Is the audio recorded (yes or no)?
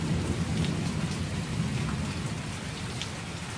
yes